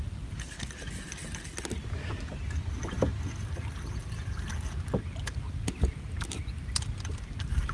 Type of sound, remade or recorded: recorded